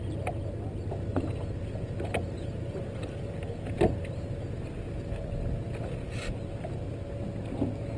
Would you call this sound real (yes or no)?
yes